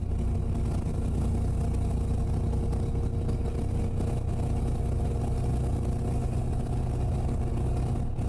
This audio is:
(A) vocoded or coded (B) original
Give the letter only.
B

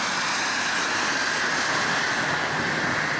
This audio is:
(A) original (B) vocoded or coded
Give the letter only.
A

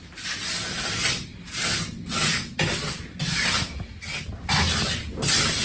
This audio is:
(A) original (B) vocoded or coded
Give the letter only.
A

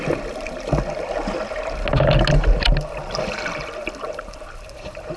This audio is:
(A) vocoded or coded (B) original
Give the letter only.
B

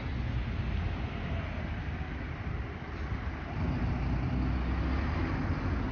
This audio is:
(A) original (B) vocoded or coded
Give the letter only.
A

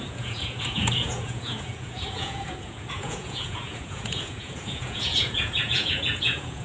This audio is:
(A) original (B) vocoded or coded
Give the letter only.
B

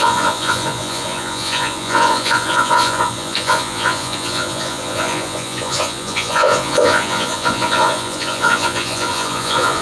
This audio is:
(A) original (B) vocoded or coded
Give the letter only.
B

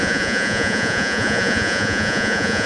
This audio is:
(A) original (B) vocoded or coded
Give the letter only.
B